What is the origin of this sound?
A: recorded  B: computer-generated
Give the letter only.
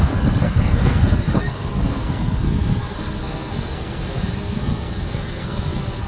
B